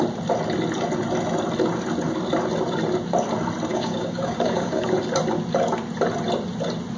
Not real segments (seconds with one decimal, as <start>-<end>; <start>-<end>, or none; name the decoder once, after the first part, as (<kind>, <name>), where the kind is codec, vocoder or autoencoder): 3.7-4.9 (codec, DAC)